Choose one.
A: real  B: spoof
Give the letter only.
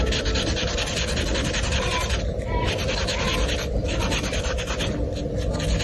A